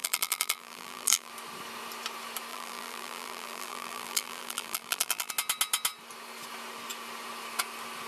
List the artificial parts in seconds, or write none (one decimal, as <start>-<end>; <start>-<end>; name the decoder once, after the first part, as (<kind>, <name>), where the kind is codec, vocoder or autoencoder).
0.0-1.3 (vocoder, BigVGAN v2); 2.5-5.3